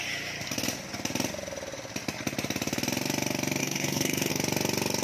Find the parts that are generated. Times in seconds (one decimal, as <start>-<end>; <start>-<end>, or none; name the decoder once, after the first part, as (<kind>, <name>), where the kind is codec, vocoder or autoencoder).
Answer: 3.6-4.3 (codec, SNAC)